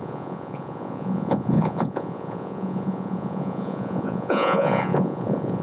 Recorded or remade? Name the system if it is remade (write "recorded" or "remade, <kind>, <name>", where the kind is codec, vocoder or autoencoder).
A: remade, vocoder, Vocos